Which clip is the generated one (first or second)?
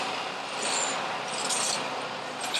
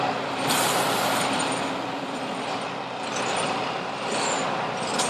second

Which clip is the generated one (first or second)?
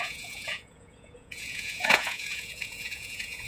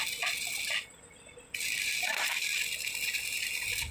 first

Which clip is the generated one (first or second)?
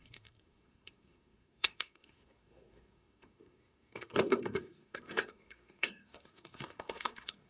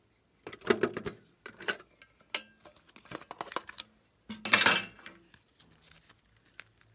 first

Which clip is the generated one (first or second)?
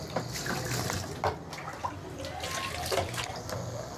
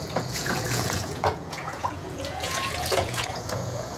second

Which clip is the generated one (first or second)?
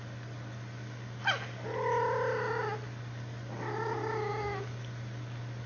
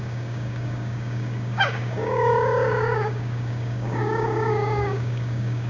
second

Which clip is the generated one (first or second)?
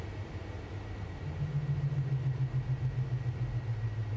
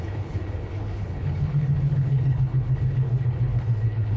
second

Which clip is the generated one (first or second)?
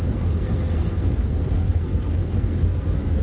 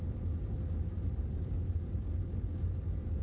first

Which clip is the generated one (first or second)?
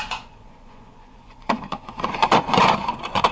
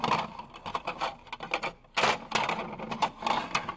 first